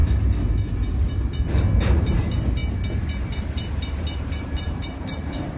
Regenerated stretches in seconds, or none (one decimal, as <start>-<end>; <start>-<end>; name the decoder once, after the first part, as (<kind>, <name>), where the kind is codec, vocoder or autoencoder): 1.8-2.6 (vocoder, BigVGAN v2); 3.2-5.6

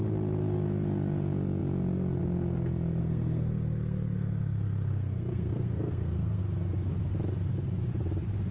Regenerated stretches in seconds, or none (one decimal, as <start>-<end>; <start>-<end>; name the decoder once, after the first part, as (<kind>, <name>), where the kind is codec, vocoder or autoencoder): 3.0-6.4 (codec, SNAC)

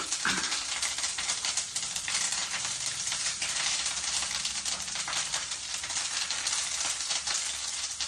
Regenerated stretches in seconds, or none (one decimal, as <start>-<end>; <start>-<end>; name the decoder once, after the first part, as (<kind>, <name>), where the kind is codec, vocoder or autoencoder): 0.0-8.1 (vocoder, BigVGAN v2)

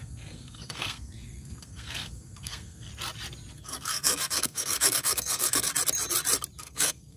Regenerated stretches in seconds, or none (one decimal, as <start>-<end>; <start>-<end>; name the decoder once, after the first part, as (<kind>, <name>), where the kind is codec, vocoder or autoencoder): 0.0-2.9 (codec, SNAC); 3.5-5.7; 6.6-7.2

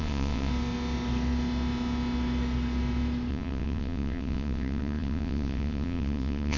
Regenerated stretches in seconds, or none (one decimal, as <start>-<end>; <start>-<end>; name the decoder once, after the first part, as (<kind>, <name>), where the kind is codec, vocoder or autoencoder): 0.0-0.5 (vocoder, WaveNeXt); 3.3-6.6

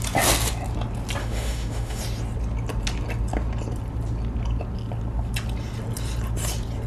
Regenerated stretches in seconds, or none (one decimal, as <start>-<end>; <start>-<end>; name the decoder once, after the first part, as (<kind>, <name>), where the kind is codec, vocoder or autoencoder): 1.2-2.0 (autoencoder, DAC-VAE)

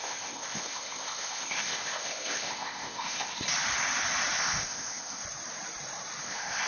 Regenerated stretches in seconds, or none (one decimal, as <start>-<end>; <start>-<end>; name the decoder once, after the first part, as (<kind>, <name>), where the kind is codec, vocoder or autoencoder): 0.0-3.3 (codec, ZipCodec); 4.4-5.2; 6.2-6.7

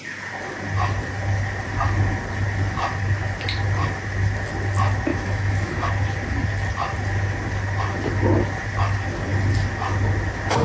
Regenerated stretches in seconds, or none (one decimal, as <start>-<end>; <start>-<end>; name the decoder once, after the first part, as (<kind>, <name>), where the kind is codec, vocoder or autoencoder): 5.1-5.9 (autoencoder, DAC-VAE)